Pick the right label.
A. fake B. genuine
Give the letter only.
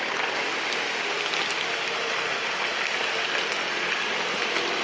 B